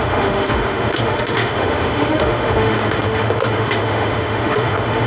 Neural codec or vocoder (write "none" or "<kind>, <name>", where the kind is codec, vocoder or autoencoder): autoencoder, DAC-VAE